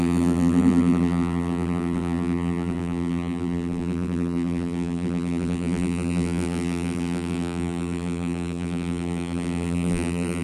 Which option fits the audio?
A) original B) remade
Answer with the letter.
B